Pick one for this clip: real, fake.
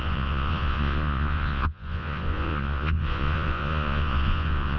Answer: fake